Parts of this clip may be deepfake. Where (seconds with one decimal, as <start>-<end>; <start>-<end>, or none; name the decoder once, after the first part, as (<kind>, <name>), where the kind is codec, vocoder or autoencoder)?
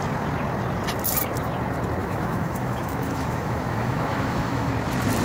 2.0-4.7 (autoencoder, DAC-VAE)